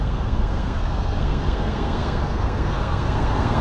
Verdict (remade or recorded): remade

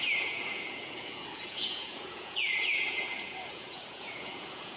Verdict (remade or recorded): remade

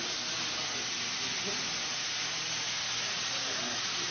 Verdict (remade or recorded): recorded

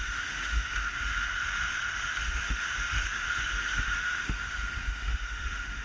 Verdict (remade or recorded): remade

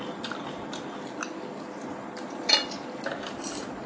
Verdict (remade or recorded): recorded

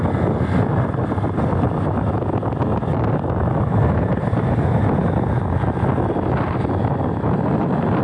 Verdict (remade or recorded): recorded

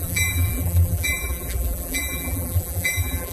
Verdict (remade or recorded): remade